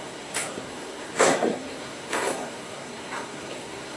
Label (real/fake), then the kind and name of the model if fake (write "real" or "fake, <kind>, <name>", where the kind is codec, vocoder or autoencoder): fake, codec, SNAC